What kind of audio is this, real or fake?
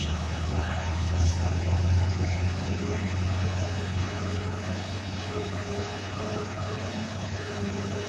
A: fake